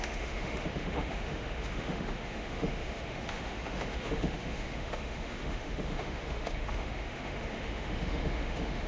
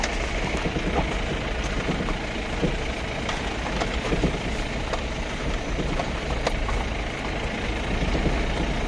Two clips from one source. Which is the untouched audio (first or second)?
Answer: second